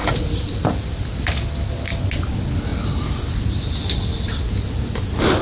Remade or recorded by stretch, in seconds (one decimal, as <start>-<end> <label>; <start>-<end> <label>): 0.0-5.4 recorded